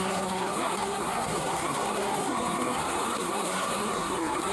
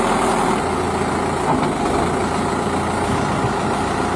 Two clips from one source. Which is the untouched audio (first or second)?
second